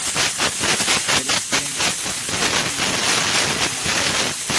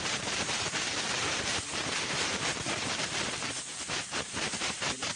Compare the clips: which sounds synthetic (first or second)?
second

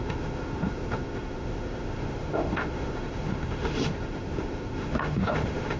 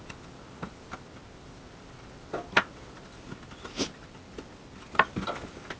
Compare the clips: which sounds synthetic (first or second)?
first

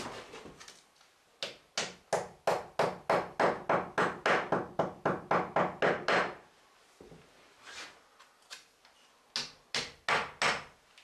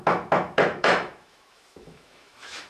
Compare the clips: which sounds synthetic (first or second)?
second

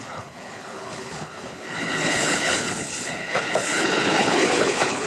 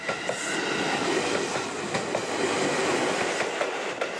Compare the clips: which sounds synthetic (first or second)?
first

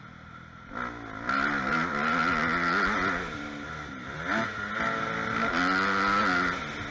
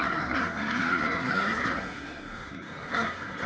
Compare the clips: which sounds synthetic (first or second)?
second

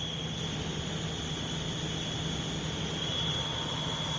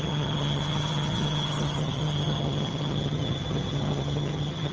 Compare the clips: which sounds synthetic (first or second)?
second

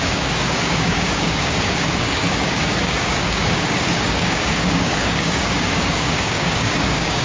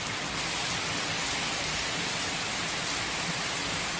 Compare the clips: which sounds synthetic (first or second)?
first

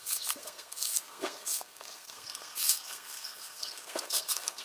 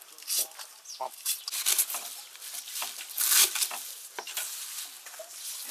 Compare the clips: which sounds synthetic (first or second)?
first